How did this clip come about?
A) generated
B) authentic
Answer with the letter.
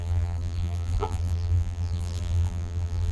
A